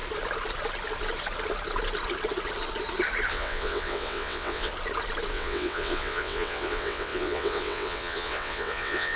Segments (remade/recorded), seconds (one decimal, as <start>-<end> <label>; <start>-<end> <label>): 0.0-3.3 recorded; 3.3-4.7 remade; 4.7-5.3 recorded; 5.3-9.2 remade

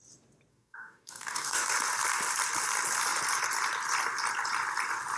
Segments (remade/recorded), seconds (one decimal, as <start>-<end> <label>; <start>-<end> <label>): 0.0-0.5 recorded; 0.5-1.7 remade; 1.7-5.2 recorded

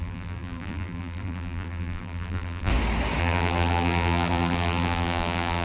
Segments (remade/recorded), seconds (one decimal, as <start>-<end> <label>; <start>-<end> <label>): 0.0-2.7 remade; 2.7-3.2 recorded; 3.2-5.6 remade

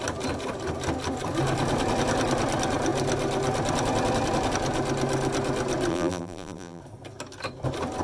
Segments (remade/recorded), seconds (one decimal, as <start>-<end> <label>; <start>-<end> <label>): 0.0-5.9 recorded; 5.9-6.8 remade; 6.8-8.0 recorded

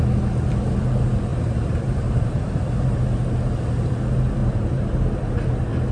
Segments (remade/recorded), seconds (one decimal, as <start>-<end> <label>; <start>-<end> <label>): 0.0-1.3 recorded; 1.3-3.0 remade; 3.0-4.4 recorded; 4.4-5.3 remade; 5.3-5.9 recorded

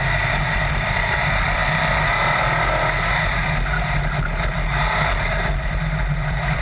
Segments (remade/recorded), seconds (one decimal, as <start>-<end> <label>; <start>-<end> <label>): 0.0-1.6 remade; 1.6-5.6 recorded; 5.6-6.6 remade

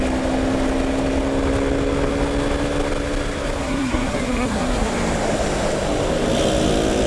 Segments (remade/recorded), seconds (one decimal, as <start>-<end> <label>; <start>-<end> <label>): 0.0-3.6 recorded; 3.6-4.9 remade; 4.9-7.1 recorded

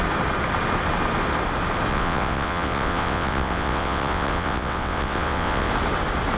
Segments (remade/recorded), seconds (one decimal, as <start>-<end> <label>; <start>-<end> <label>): 0.0-1.9 recorded; 1.9-5.7 remade; 5.7-6.4 recorded